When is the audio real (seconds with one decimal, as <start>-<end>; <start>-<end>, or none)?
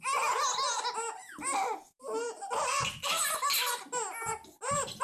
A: 0.0-5.0